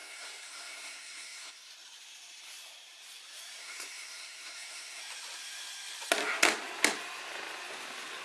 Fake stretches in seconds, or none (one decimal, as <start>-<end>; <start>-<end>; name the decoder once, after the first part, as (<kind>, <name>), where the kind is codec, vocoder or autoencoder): 0.0-1.7 (codec, SNAC); 3.6-5.0